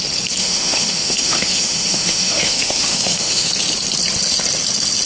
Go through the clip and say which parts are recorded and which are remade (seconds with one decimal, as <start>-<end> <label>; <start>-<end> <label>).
0.0-0.4 recorded; 0.4-3.5 remade; 3.5-5.1 recorded